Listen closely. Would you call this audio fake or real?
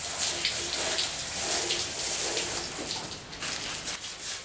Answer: real